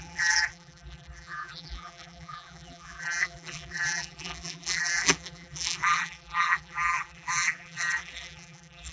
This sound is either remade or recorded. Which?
remade